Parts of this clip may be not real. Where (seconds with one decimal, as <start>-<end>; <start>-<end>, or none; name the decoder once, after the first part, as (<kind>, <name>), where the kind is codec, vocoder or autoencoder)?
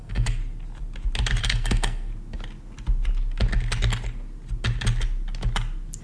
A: 0.0-0.4 (codec, SNAC); 1.4-2.1